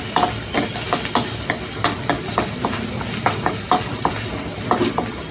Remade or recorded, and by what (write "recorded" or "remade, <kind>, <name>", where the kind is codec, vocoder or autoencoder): recorded